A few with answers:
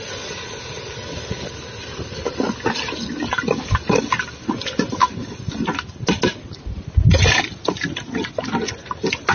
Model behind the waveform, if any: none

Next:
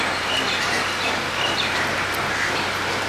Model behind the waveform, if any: none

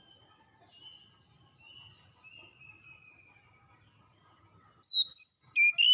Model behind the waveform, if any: none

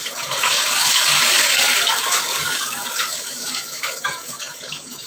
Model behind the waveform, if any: codec, DAC